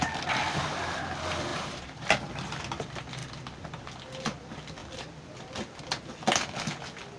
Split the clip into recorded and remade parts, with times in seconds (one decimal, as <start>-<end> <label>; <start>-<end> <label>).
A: 0.0-1.5 recorded; 1.5-2.6 remade; 2.6-7.2 recorded